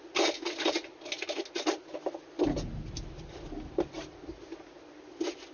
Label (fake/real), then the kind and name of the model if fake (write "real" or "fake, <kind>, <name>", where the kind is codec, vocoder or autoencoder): real